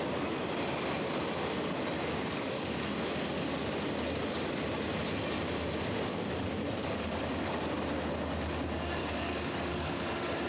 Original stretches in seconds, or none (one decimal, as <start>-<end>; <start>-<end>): 0.0-2.3; 3.6-6.1; 7.5-9.0; 10.1-10.5

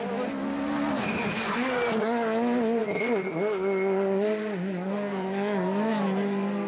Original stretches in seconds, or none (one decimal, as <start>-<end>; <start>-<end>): 0.0-6.7

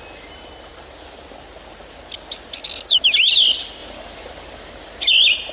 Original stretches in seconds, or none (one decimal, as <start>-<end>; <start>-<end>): 0.0-5.5

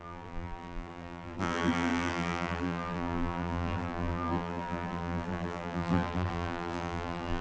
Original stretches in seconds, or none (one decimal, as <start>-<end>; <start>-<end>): none